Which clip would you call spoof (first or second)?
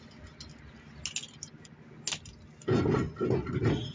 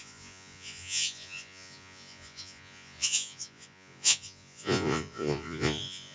second